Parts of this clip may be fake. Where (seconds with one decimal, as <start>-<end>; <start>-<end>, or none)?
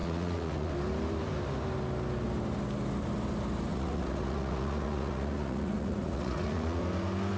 0.0-0.7; 3.7-6.8